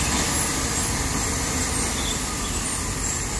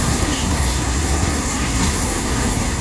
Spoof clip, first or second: second